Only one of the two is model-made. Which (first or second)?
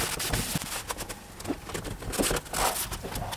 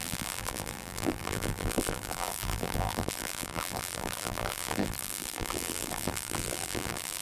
second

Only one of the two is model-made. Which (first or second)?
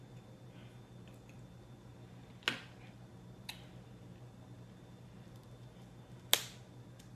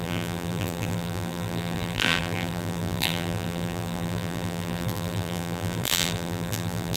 second